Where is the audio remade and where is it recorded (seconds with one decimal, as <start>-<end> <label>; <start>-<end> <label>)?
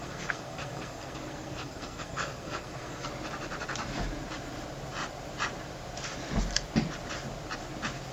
0.0-3.1 remade; 3.1-8.1 recorded